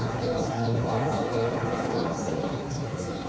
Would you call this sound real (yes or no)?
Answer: no